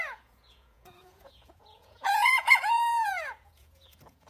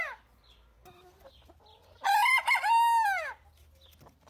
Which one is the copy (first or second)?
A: first